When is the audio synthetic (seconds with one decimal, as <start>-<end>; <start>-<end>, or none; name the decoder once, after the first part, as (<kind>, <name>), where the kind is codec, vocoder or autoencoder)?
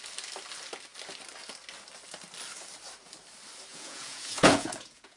3.7-5.2 (vocoder, Vocos)